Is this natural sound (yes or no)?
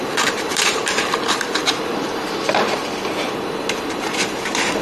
no